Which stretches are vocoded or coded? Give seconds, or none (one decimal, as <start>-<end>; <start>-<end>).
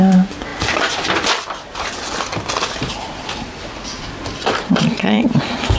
0.0-5.8